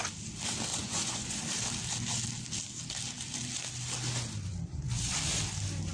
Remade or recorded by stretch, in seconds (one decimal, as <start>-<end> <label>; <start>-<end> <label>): 0.0-0.7 recorded; 0.7-1.4 remade; 1.4-5.9 recorded